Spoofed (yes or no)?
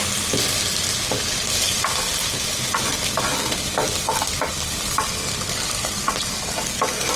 no